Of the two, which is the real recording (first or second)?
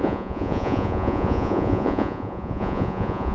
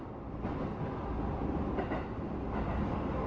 second